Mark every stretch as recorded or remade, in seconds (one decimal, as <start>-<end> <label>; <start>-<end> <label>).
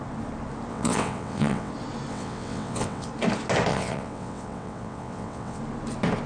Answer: 0.0-0.7 recorded; 0.7-1.7 remade; 1.7-2.1 recorded; 2.1-3.1 remade; 3.1-3.7 recorded; 3.7-5.6 remade; 5.6-6.3 recorded